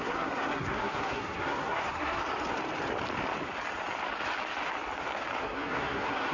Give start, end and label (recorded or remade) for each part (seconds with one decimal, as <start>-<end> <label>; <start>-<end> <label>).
0.0-2.2 remade; 2.2-5.4 recorded; 5.4-6.3 remade